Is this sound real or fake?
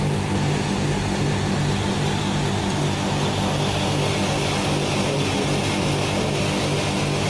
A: real